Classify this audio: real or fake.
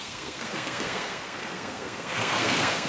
fake